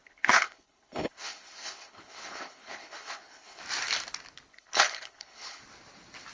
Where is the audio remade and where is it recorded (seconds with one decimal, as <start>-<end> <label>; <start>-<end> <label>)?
0.0-3.6 remade; 3.6-4.5 recorded; 4.5-5.6 remade; 5.6-6.3 recorded